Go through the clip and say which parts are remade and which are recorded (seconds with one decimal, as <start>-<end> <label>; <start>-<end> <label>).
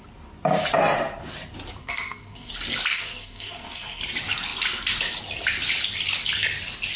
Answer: 0.0-1.8 recorded; 1.8-2.5 remade; 2.5-2.9 recorded; 2.9-4.0 remade; 4.0-7.0 recorded